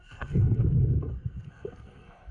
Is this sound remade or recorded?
remade